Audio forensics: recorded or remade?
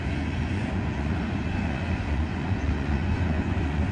remade